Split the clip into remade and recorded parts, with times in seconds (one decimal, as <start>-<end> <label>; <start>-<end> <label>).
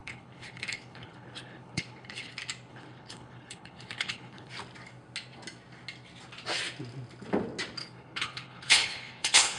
0.0-2.3 remade; 2.3-2.7 recorded; 2.7-4.5 remade; 4.5-7.8 recorded; 7.8-9.6 remade